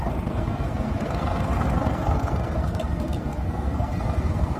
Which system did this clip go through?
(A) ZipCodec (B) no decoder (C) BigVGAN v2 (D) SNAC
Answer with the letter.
D